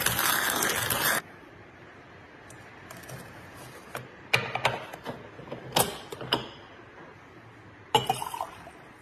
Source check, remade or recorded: recorded